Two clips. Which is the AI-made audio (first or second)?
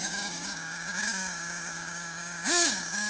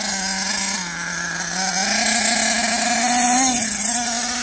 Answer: first